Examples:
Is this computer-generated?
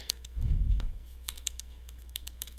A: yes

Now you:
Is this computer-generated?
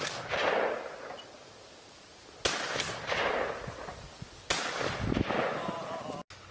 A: no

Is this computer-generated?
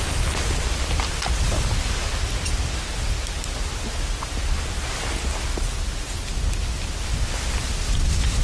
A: no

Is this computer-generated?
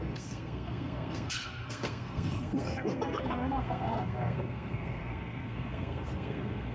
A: yes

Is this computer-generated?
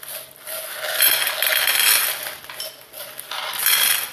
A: no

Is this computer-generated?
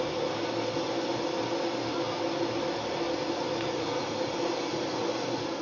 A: no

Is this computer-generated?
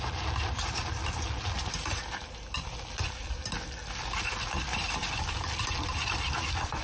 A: no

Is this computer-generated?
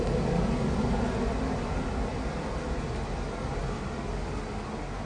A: no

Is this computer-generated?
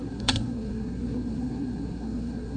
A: yes